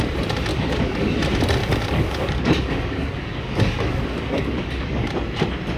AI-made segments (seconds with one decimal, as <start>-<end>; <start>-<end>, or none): 0.5-1.1; 1.6-5.1